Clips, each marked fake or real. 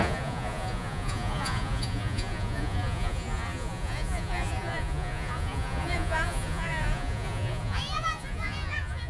fake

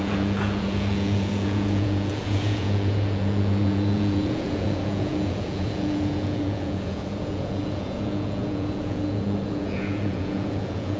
fake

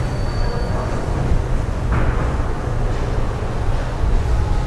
fake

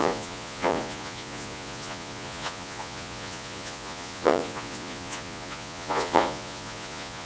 fake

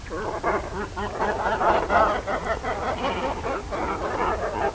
real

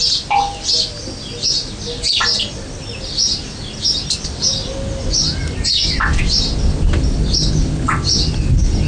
real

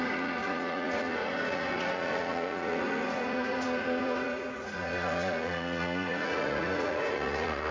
fake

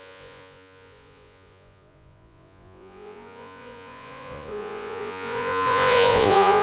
fake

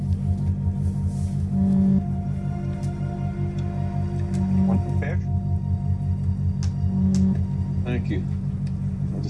real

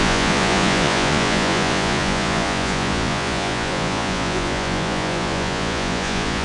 fake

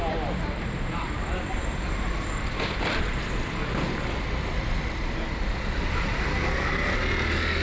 real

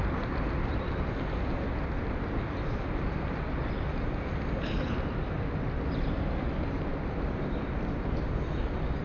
real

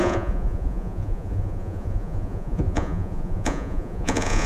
fake